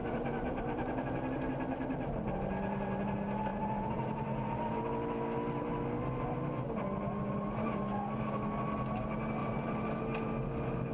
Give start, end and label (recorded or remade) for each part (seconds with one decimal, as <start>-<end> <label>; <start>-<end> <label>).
0.0-0.6 remade; 0.6-3.5 recorded; 3.5-4.8 remade; 4.8-9.4 recorded; 9.4-9.9 remade; 9.9-10.9 recorded